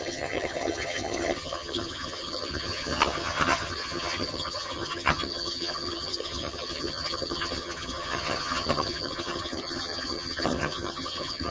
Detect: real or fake fake